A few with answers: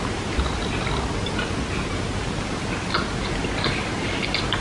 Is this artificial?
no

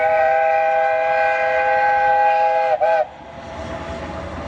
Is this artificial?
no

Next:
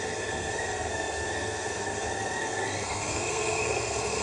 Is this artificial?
yes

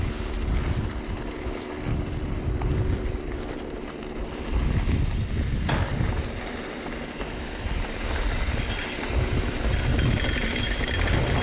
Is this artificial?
no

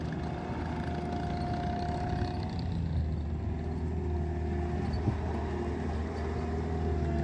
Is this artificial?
no